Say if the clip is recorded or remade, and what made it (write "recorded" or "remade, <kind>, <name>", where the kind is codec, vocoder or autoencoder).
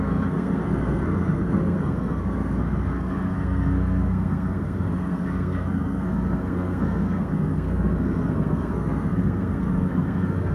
remade, codec, SNAC